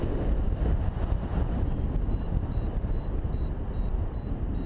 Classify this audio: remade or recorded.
remade